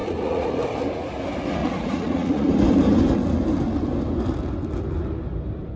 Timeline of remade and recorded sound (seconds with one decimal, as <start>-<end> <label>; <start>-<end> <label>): 0.0-0.6 remade; 0.6-1.6 recorded; 1.6-2.5 remade; 2.5-5.8 recorded